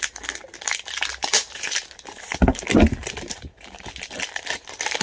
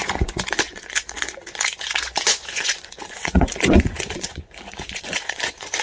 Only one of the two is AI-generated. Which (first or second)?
second